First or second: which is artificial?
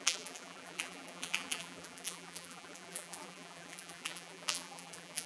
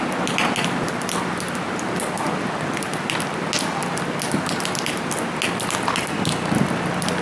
first